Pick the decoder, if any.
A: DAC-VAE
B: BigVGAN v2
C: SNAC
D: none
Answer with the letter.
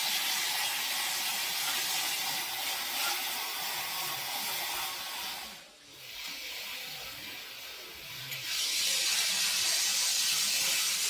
D